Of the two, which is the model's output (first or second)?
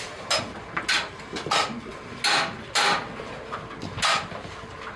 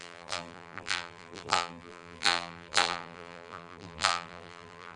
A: second